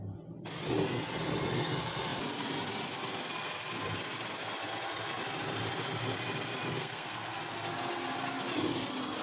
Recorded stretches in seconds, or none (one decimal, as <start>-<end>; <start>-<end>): 0.0-6.8; 7.4-9.2